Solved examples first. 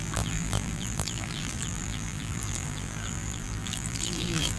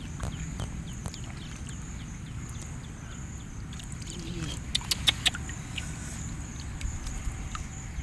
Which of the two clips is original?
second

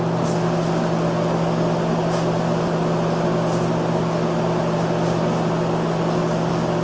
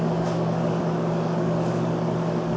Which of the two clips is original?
first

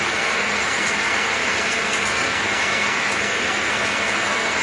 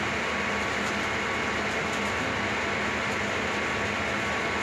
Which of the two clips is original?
second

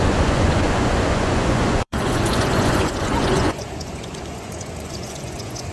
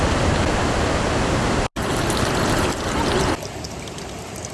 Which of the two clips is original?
second